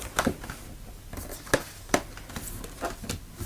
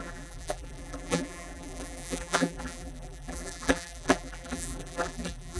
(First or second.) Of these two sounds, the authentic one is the first